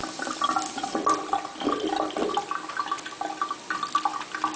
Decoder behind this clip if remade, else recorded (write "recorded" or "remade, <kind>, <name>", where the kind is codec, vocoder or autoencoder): recorded